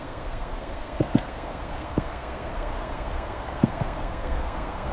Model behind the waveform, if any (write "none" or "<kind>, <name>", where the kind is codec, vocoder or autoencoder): codec, SNAC